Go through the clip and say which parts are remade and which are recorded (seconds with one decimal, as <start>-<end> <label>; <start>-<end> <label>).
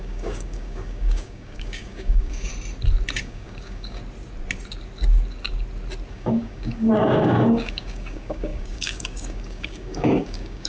0.0-2.5 remade; 2.5-3.2 recorded; 3.2-4.0 remade; 4.0-6.1 recorded; 6.1-10.7 remade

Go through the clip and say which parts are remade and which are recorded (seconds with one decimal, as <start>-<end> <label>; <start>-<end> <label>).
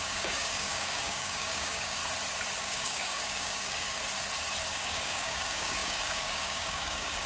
0.0-2.0 remade; 2.0-2.6 recorded; 2.6-4.0 remade; 4.0-4.7 recorded; 4.7-7.3 remade